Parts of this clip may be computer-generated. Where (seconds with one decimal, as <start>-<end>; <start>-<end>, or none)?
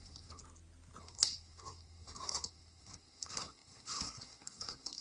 0.0-0.4; 1.0-5.0